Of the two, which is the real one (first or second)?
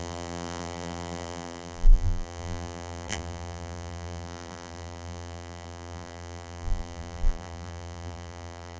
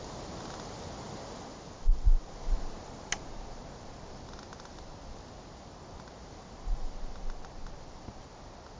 second